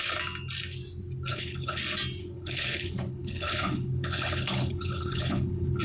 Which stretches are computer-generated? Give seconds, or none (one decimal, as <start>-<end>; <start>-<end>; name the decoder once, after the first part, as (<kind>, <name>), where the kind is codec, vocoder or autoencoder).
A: 1.3-1.8 (codec, HILCodec); 2.2-5.8